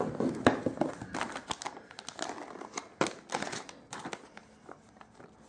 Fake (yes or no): no